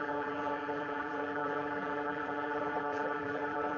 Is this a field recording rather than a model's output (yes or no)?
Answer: no